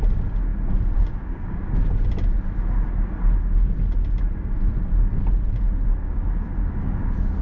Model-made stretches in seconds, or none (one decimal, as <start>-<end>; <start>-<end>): none